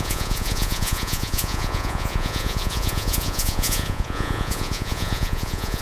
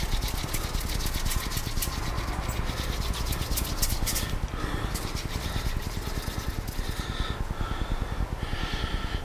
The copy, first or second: first